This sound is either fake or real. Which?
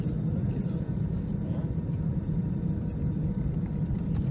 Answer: real